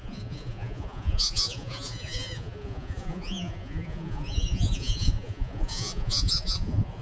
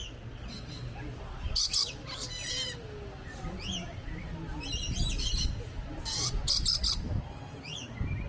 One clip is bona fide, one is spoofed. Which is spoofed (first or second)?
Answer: first